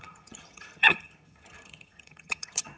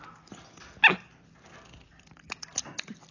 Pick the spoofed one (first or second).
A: first